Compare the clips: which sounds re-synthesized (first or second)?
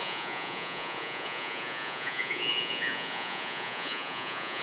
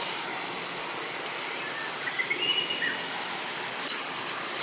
first